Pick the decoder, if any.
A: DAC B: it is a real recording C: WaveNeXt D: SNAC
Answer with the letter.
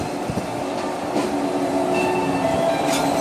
B